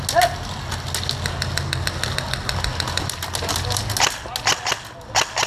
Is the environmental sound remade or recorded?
recorded